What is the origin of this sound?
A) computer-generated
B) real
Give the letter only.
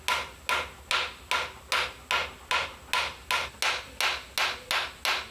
B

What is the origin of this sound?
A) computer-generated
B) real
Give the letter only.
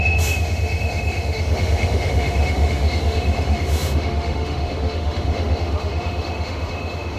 A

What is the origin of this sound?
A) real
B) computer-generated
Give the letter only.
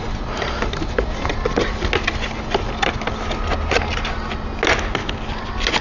A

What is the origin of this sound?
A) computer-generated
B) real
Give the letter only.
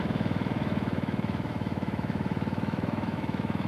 A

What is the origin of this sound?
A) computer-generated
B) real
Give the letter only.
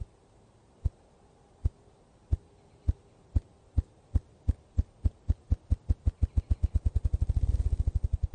B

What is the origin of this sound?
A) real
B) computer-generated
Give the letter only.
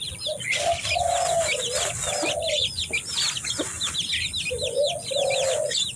A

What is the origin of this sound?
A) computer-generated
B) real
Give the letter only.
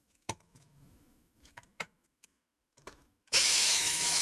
A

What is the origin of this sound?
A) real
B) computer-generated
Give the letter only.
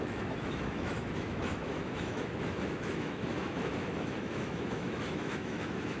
B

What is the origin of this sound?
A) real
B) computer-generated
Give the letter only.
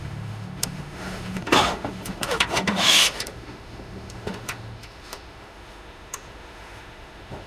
B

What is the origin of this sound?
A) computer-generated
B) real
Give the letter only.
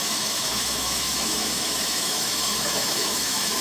A